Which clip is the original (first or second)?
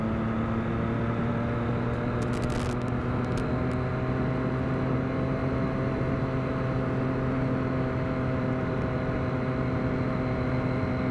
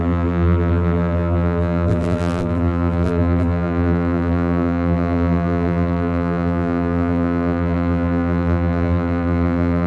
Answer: first